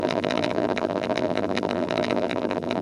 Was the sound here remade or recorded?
remade